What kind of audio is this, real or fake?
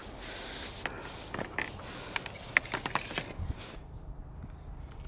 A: real